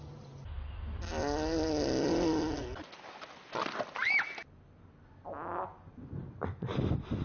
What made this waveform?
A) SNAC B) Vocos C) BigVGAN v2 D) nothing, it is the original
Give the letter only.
D